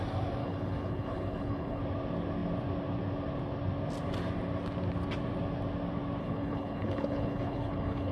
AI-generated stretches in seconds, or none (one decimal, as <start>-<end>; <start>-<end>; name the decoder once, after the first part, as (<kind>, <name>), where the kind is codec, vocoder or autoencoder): 0.4-1.8 (codec, HILCodec); 6.2-8.1